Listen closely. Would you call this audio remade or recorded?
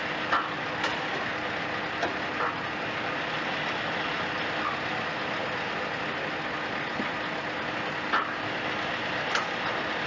recorded